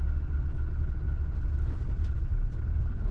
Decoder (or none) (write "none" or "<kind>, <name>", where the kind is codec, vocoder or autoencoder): none